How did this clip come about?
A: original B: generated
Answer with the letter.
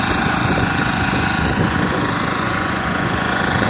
B